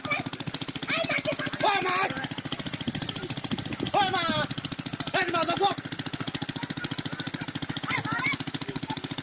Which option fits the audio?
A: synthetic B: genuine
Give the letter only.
B